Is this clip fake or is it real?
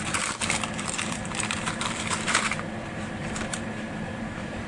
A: fake